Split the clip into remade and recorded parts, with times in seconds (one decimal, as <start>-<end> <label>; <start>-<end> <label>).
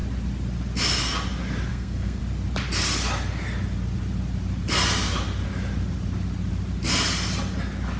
0.0-1.7 recorded; 1.7-2.2 remade; 2.2-8.0 recorded